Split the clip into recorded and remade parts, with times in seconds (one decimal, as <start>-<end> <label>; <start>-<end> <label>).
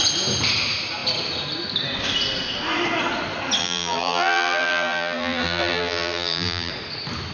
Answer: 0.0-3.6 recorded; 3.6-6.7 remade; 6.7-7.3 recorded